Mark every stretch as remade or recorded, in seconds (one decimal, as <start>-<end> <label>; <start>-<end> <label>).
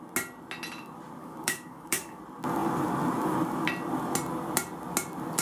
0.0-1.2 recorded; 1.2-2.2 remade; 2.2-5.4 recorded